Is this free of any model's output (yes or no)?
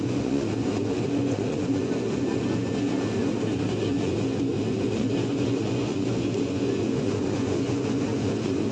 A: no